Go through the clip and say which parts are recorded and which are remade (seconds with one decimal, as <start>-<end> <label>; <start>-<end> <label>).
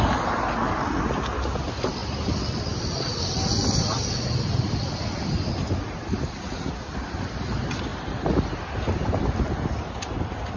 0.0-10.6 recorded